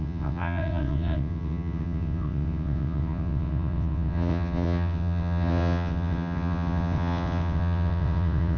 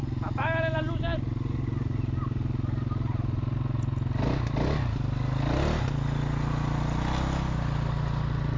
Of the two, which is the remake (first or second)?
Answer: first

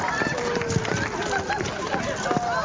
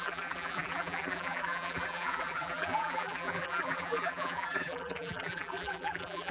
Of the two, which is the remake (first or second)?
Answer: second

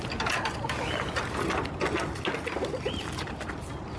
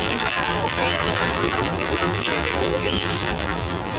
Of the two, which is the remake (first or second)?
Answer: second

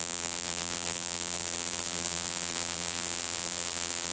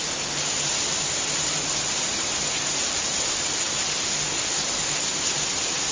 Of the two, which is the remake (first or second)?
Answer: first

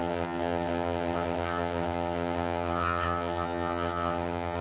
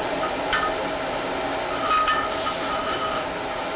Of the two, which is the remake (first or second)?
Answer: first